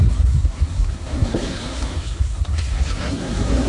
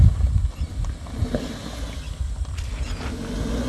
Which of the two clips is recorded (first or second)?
second